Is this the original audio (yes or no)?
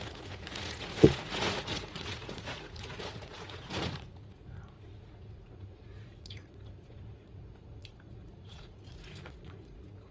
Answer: no